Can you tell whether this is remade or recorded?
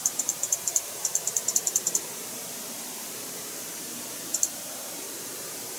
remade